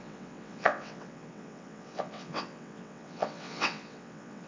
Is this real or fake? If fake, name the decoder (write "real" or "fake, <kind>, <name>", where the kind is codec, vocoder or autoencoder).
fake, vocoder, WaveNeXt